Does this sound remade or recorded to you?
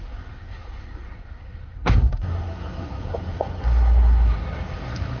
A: remade